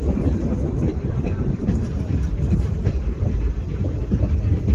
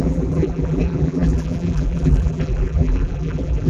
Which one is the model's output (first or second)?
second